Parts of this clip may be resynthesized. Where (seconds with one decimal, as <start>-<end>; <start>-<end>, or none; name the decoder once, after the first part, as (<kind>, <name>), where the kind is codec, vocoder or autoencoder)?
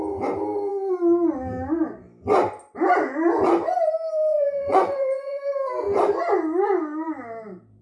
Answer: 4.3-5.4 (vocoder, Vocos)